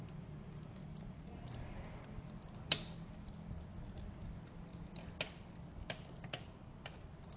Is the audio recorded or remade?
recorded